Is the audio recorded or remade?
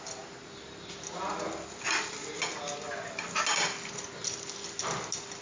recorded